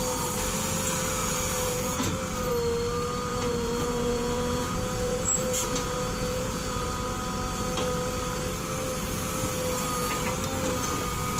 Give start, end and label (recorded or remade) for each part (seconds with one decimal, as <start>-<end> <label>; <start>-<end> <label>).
0.0-1.2 recorded; 1.2-2.5 remade; 2.5-3.3 recorded; 3.3-6.9 remade; 6.9-11.4 recorded